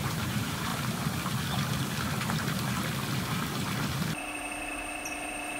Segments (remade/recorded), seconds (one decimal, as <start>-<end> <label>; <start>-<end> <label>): 0.0-0.7 remade; 0.7-4.1 recorded; 4.1-5.6 remade